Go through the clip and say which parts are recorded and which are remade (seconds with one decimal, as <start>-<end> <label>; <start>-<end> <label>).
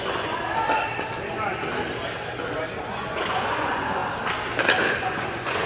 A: 0.0-0.4 remade; 0.4-2.8 recorded; 2.8-4.0 remade; 4.0-4.9 recorded; 4.9-5.7 remade